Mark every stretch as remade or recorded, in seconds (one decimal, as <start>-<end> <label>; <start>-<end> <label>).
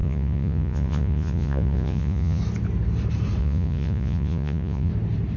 0.0-2.4 remade; 2.4-3.4 recorded; 3.4-4.9 remade; 4.9-5.4 recorded